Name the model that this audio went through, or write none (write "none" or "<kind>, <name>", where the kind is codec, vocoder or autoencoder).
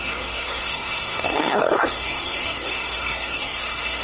codec, SNAC